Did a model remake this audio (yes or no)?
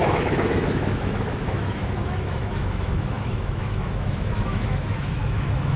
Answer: yes